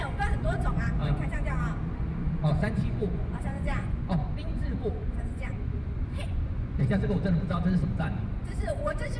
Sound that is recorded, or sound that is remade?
remade